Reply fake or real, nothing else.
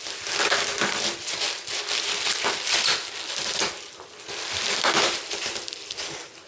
real